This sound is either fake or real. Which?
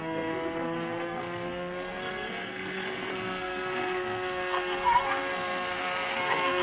fake